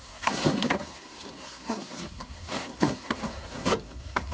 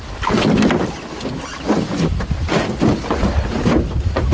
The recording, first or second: second